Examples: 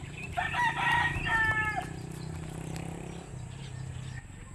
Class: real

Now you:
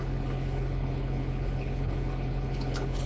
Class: fake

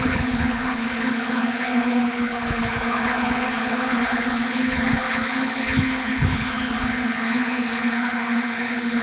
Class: fake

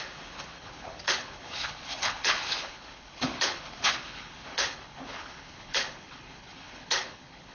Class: fake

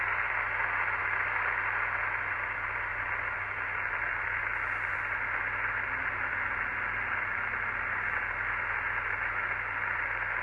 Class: real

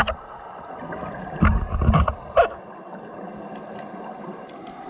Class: real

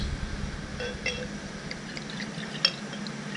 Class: real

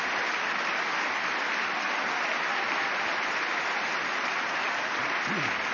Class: real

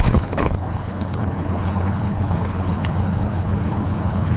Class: fake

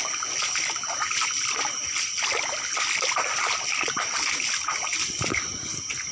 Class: real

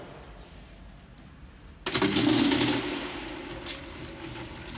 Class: real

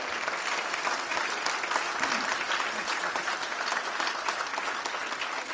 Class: real